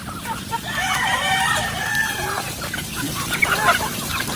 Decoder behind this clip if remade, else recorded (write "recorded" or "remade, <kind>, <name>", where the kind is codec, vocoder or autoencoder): remade, vocoder, BigVGAN v2